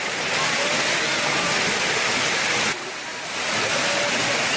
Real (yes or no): no